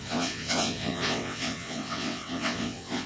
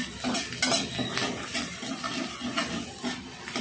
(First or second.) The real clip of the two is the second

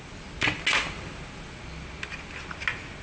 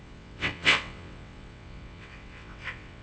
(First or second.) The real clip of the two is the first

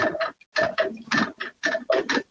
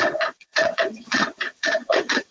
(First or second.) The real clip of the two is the first